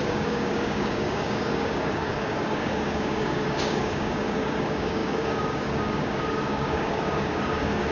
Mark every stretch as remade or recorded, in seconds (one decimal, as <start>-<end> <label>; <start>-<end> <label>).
0.0-7.9 remade

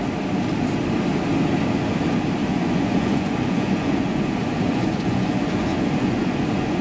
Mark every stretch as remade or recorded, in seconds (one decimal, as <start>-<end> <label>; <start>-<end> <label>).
0.0-2.5 recorded; 2.5-6.8 remade

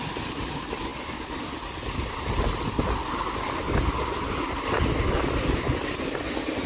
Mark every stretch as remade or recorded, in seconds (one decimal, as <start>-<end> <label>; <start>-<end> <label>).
0.0-6.7 recorded

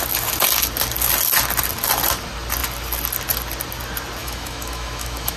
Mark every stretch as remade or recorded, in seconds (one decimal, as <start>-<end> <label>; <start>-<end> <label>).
0.0-4.2 recorded; 4.2-5.4 remade

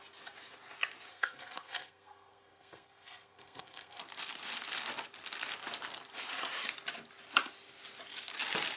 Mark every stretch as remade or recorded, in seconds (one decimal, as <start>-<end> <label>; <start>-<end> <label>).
0.0-1.1 recorded; 1.1-4.0 remade; 4.0-8.8 recorded

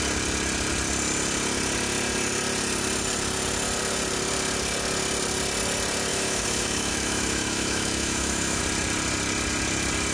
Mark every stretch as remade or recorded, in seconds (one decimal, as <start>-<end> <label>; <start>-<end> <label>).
0.0-6.1 recorded; 6.1-8.6 remade; 8.6-10.1 recorded

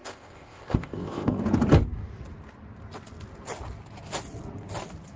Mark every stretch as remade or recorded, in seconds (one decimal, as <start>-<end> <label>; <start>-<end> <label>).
0.0-1.4 remade; 1.4-5.2 recorded